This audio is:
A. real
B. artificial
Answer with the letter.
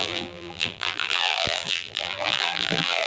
B